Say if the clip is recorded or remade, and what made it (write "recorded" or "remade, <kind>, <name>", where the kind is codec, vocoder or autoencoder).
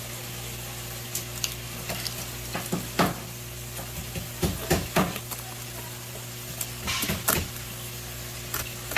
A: recorded